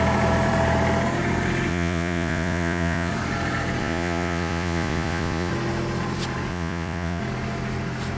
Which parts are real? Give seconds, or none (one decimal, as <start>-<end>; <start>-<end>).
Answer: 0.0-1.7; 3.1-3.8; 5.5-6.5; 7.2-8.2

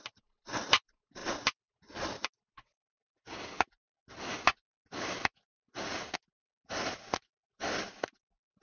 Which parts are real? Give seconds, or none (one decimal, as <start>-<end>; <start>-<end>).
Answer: 0.0-8.6

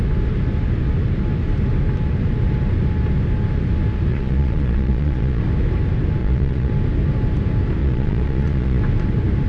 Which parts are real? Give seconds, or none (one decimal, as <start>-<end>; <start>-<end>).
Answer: 0.0-4.1; 5.4-6.2; 6.7-7.8; 8.8-9.5

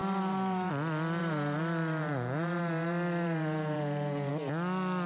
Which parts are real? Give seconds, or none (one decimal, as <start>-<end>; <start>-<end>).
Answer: 0.7-1.2; 4.3-5.1

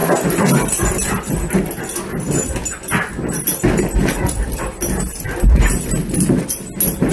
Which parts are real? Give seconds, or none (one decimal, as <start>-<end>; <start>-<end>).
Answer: 0.0-7.1

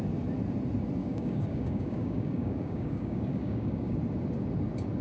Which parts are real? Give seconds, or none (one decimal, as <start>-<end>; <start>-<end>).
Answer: 0.0-1.0; 4.0-5.0